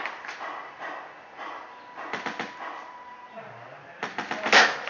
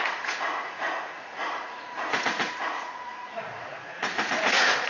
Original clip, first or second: first